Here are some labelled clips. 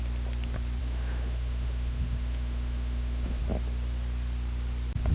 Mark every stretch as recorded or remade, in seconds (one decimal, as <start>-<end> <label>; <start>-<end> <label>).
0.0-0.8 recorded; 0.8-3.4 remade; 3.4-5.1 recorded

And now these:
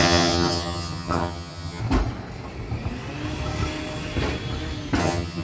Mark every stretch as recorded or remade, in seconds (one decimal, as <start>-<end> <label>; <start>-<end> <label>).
0.0-1.8 remade; 1.8-5.0 recorded; 5.0-5.4 remade

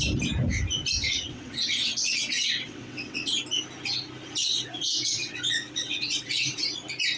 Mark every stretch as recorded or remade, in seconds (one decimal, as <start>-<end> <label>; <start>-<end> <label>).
0.0-1.0 recorded; 1.0-3.4 remade; 3.4-4.4 recorded; 4.4-6.6 remade; 6.6-7.2 recorded

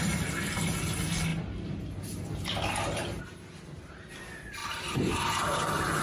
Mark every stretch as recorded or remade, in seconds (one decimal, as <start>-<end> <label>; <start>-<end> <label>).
0.0-6.0 recorded

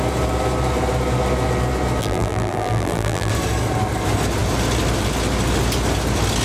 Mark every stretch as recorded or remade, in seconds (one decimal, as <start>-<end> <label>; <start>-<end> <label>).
0.0-2.0 recorded; 2.0-3.3 remade; 3.3-6.4 recorded